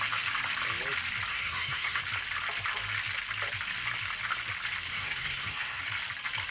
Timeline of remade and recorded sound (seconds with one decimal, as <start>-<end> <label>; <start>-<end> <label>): 0.0-1.3 recorded; 1.3-2.0 remade; 2.0-4.9 recorded; 4.9-5.8 remade; 5.8-6.5 recorded